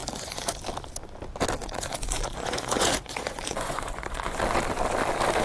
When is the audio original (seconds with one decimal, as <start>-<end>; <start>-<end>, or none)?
0.6-1.6; 4.4-5.4